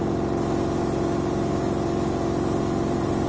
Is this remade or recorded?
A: recorded